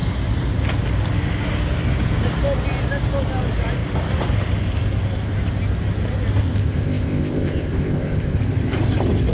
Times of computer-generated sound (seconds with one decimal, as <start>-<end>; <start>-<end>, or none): 6.4-8.4